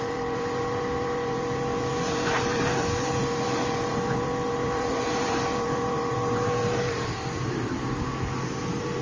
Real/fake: fake